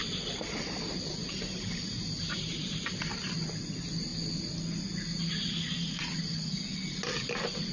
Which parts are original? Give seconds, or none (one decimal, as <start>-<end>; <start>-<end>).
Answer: 0.0-1.2; 3.3-7.7